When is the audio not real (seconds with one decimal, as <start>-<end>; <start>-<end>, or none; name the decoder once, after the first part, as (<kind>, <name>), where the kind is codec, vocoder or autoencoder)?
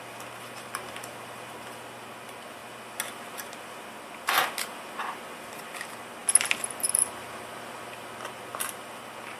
none